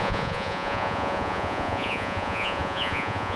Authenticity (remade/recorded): remade